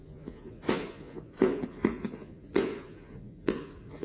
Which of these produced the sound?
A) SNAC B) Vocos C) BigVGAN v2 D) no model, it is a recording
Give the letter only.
B